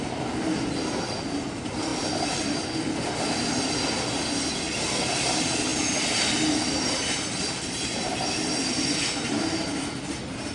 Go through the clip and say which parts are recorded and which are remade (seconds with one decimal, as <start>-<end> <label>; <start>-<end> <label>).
0.0-10.5 recorded